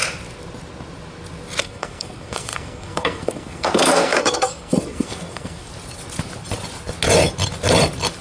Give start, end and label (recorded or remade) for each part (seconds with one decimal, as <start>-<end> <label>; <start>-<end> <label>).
0.0-1.6 recorded; 1.6-5.7 remade; 5.7-8.2 recorded